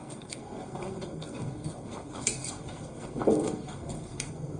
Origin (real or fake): fake